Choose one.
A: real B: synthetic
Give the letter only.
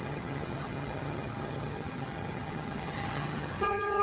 B